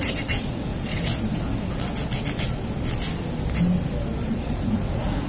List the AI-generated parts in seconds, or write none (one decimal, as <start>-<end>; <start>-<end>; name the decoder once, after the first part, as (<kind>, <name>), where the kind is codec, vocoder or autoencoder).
0.0-1.1 (vocoder, Vocos); 4.3-5.3